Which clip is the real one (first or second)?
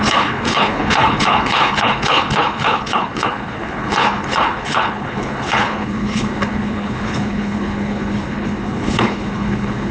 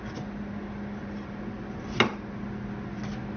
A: second